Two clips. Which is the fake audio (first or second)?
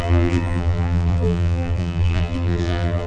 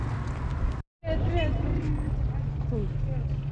first